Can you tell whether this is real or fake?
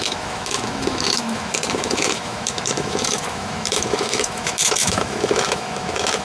fake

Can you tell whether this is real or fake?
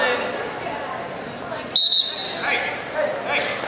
real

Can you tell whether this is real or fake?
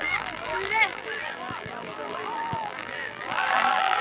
fake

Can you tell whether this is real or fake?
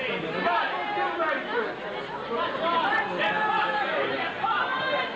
real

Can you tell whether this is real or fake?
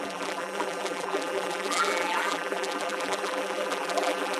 fake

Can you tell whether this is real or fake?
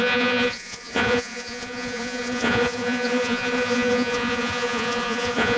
fake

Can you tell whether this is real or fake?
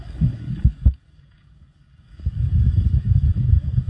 fake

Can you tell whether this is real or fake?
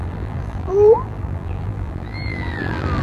fake